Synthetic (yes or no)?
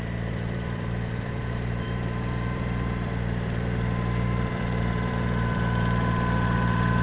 yes